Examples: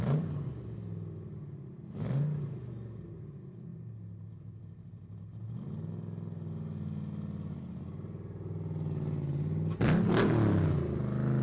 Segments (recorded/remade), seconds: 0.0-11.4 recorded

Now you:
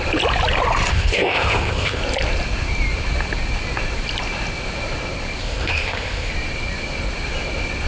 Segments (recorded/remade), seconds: 0.0-0.9 recorded; 0.9-2.0 remade; 2.0-5.4 recorded; 5.4-6.3 remade; 6.3-7.9 recorded

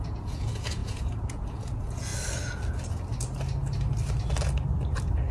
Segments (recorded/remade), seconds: 0.0-2.1 remade; 2.1-5.3 recorded

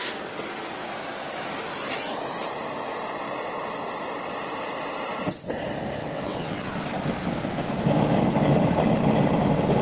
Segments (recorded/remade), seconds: 0.0-6.0 recorded; 6.0-6.7 remade; 6.7-9.8 recorded

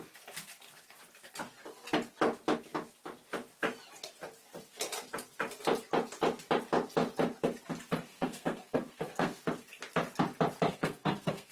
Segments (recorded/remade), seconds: 0.0-8.1 recorded; 8.1-9.4 remade; 9.4-10.7 recorded; 10.7-11.5 remade

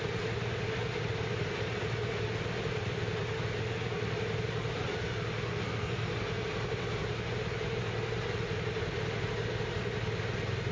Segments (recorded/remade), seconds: 0.0-5.5 recorded; 5.5-6.1 remade; 6.1-10.7 recorded

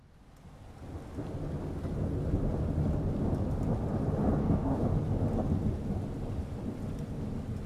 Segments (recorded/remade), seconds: 0.0-4.4 recorded; 4.4-4.9 remade; 4.9-7.7 recorded

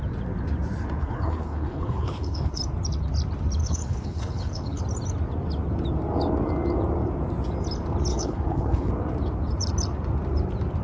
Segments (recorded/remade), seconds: 0.0-1.0 recorded; 1.0-2.6 remade; 2.6-3.6 recorded; 3.6-4.8 remade; 4.8-8.1 recorded; 8.1-8.9 remade; 8.9-10.8 recorded